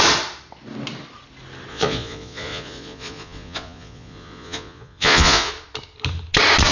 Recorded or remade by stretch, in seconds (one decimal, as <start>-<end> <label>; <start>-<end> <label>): 0.0-1.7 recorded; 1.7-5.5 remade; 5.5-6.7 recorded